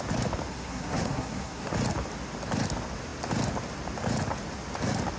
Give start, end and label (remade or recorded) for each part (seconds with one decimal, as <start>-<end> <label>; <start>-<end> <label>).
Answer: 0.0-0.5 recorded; 0.5-1.7 remade; 1.7-5.2 recorded